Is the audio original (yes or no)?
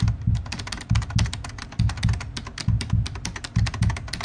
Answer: yes